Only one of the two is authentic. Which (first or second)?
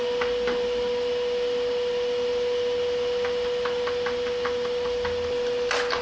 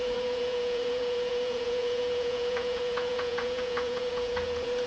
first